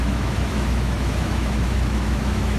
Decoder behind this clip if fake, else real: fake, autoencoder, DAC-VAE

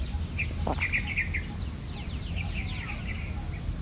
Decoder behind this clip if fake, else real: real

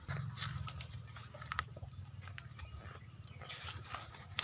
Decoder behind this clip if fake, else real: fake, vocoder, BigVGAN v2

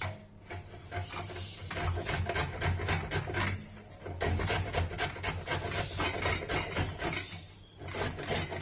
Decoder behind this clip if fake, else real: real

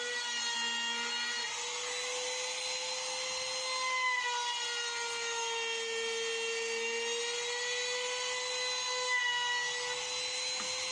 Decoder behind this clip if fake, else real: real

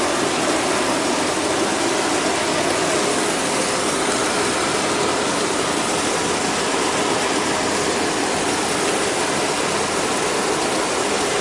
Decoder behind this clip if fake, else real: real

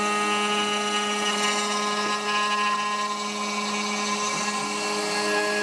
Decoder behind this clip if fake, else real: real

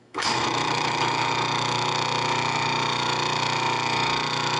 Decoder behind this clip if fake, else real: fake, autoencoder, DAC-VAE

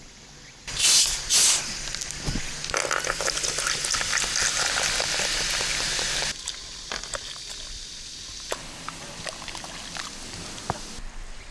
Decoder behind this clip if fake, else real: real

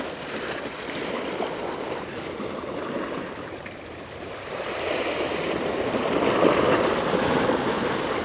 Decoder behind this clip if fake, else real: fake, vocoder, BigVGAN v2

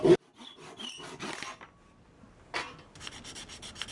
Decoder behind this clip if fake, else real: real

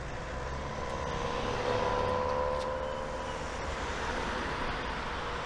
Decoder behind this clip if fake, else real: real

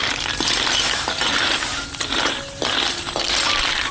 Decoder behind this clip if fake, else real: real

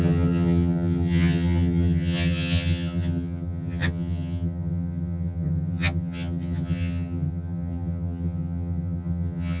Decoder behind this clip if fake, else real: fake, vocoder, HiFi-GAN